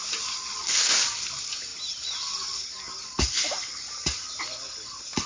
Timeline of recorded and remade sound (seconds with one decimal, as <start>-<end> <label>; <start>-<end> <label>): 0.0-5.3 recorded